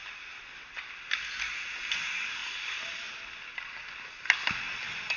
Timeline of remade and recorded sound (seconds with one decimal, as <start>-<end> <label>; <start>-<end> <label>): 0.0-5.2 recorded